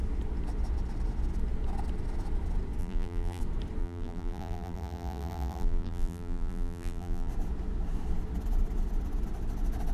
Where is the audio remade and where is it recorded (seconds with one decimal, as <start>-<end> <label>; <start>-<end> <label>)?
0.0-2.8 recorded; 2.8-3.4 remade; 3.4-3.8 recorded; 3.8-7.3 remade; 7.3-9.9 recorded